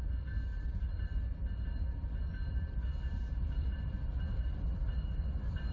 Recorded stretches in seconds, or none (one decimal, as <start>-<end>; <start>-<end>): 0.0-0.5; 1.1-5.7